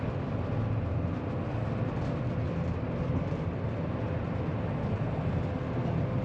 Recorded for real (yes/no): yes